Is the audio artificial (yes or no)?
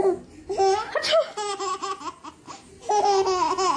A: no